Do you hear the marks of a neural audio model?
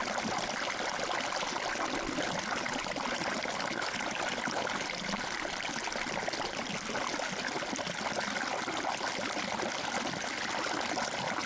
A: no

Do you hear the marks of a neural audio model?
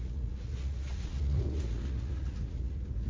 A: yes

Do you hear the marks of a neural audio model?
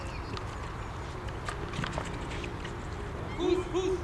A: no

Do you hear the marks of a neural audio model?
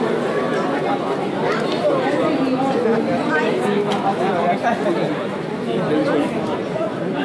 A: no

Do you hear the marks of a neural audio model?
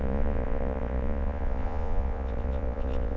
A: yes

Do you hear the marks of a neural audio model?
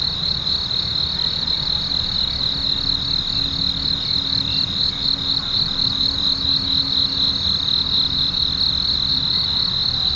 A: no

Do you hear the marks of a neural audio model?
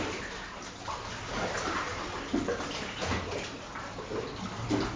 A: no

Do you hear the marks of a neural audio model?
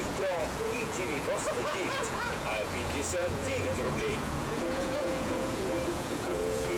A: yes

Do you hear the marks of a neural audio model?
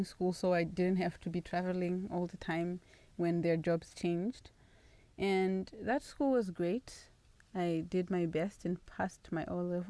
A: no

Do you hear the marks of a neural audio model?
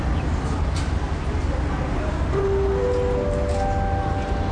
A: no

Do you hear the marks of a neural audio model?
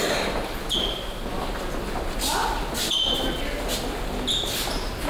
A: no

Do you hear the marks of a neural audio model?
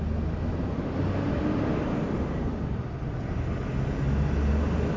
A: no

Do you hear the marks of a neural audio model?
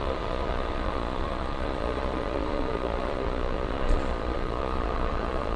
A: yes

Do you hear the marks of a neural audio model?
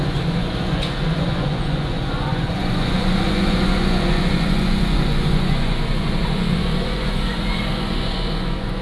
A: yes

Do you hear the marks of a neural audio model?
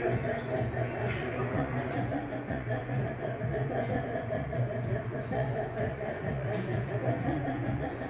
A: yes